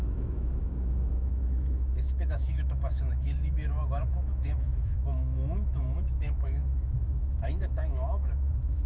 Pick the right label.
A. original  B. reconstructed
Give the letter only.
B